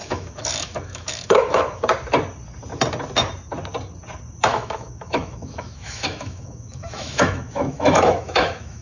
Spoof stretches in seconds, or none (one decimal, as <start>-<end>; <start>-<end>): 0.0-1.8; 4.5-8.8